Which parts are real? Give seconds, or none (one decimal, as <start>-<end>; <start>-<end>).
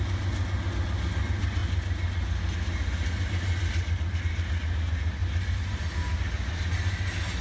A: 0.0-7.4